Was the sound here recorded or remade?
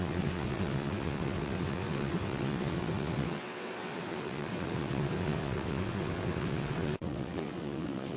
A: remade